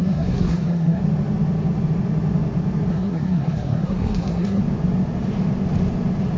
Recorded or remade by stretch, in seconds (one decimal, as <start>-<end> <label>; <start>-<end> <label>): 0.0-1.0 remade; 1.0-2.9 recorded; 2.9-4.6 remade; 4.6-6.4 recorded